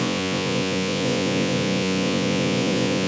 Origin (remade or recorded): remade